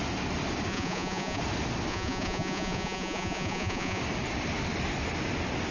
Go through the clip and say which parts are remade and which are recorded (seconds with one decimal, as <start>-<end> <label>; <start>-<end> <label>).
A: 0.0-0.7 recorded; 0.7-1.4 remade; 1.4-1.9 recorded; 1.9-4.0 remade; 4.0-5.7 recorded